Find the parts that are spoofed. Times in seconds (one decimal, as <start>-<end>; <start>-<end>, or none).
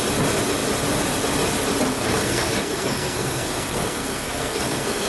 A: 1.9-5.1